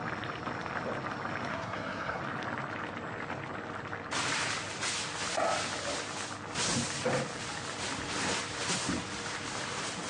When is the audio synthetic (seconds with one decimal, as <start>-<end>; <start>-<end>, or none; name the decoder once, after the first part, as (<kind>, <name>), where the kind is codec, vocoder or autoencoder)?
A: 1.5-2.2 (codec, SNAC)